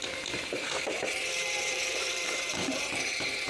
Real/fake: fake